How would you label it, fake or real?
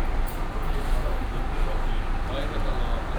real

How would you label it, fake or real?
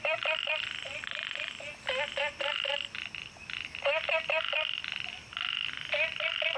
real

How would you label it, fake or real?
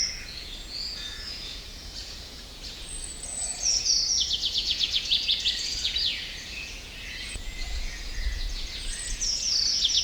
fake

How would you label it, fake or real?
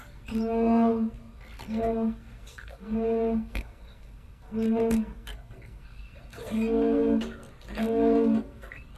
fake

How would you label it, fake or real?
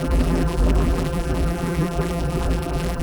fake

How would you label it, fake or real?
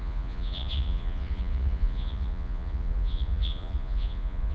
fake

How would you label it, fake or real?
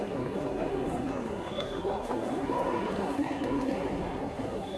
fake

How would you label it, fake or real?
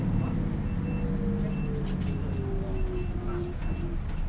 real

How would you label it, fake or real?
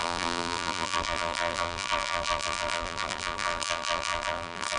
fake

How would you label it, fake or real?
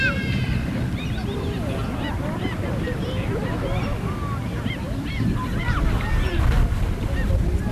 fake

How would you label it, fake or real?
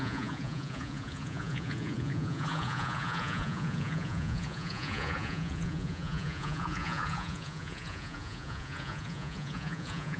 fake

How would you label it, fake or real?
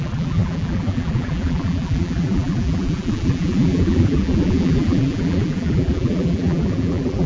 fake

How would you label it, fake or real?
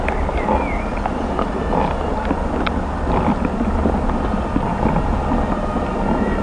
real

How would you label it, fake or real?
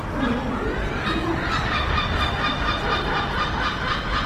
real